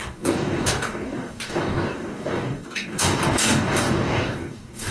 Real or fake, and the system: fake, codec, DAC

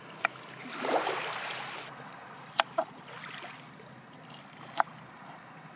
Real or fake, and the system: real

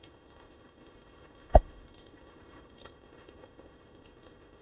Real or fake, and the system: fake, autoencoder, DAC-VAE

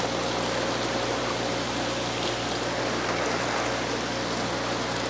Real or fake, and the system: real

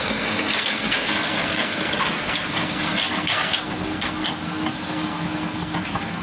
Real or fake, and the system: fake, codec, SNAC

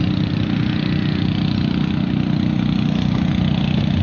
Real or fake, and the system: real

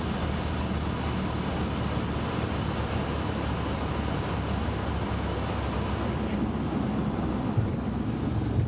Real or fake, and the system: real